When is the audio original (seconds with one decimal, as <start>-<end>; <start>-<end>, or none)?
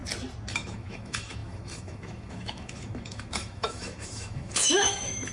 0.0-0.5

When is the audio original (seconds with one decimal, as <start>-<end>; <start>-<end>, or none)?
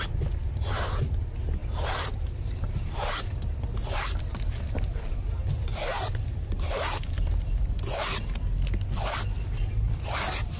0.0-1.6; 2.8-5.7; 7.7-10.6